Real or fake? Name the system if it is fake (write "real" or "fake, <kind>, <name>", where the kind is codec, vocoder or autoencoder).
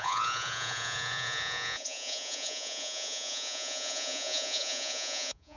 fake, vocoder, Vocos